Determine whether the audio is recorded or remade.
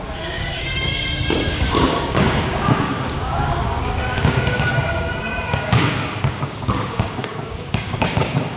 remade